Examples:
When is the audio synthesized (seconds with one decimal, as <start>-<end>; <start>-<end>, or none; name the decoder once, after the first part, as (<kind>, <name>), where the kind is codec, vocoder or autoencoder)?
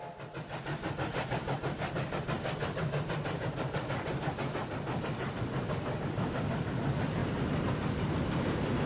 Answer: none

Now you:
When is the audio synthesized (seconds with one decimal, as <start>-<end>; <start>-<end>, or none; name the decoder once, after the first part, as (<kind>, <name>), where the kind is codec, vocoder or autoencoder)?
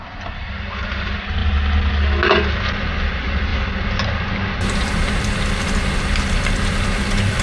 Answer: none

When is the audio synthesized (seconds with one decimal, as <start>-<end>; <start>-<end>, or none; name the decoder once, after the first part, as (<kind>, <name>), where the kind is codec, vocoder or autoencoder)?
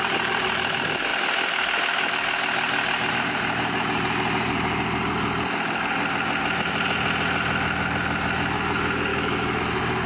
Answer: 9.1-9.6 (autoencoder, DAC-VAE)